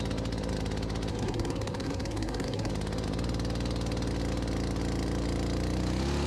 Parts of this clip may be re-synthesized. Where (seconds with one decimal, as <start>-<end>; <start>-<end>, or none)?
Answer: 1.1-2.7